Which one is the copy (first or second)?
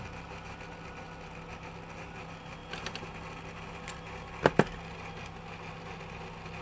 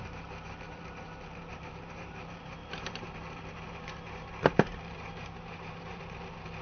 second